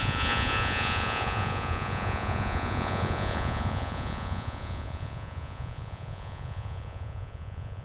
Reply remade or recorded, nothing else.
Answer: remade